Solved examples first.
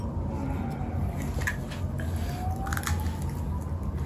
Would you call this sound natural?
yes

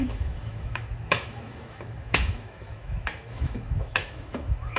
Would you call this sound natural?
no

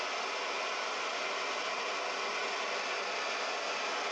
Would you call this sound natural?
yes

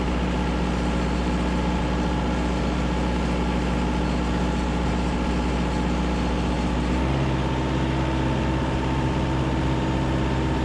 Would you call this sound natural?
yes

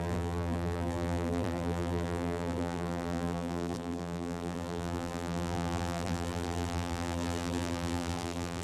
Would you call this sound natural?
no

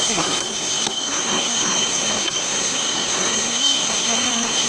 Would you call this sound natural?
no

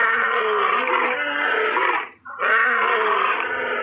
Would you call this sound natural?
yes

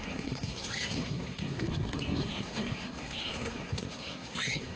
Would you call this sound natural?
no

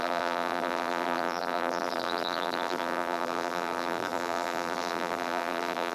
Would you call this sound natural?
no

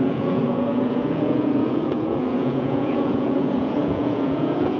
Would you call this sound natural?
no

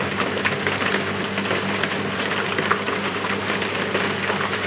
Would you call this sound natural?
yes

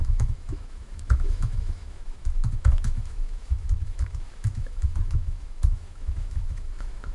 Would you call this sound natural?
no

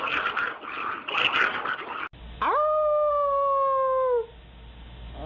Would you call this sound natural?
yes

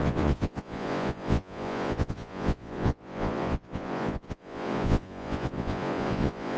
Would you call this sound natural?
no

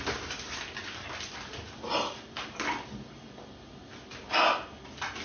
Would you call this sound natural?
yes